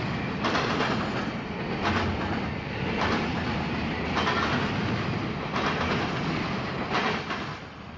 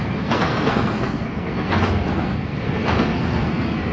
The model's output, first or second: second